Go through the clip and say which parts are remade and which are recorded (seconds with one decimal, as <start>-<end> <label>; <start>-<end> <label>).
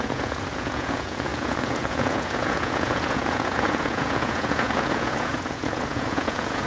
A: 0.0-6.7 remade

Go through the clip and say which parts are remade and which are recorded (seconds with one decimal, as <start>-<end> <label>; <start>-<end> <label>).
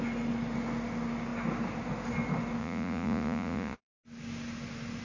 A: 0.0-2.6 recorded; 2.6-4.0 remade; 4.0-5.0 recorded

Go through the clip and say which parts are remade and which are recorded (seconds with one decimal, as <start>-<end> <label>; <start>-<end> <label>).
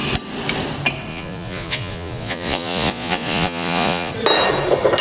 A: 0.0-1.1 recorded; 1.1-4.1 remade; 4.1-5.0 recorded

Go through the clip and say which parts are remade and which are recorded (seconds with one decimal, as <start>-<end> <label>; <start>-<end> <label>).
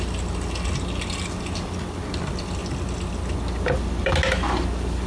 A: 0.0-5.1 recorded